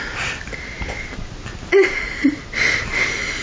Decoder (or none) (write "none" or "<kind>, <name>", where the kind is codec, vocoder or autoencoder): none